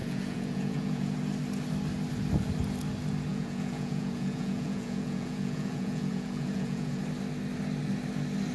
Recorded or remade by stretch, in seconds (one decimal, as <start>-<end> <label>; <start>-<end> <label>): 0.0-1.1 remade; 1.1-3.3 recorded; 3.3-7.0 remade; 7.0-8.5 recorded